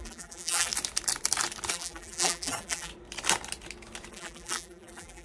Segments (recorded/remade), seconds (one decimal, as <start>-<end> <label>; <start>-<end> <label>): 0.0-0.7 remade; 0.7-1.7 recorded; 1.7-2.9 remade; 2.9-4.1 recorded; 4.1-5.2 remade